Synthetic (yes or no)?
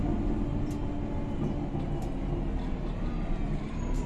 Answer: no